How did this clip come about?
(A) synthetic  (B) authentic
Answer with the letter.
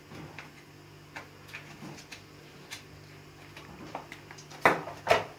B